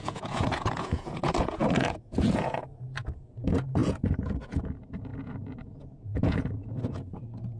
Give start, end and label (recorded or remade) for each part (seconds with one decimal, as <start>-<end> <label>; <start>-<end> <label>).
0.0-7.6 remade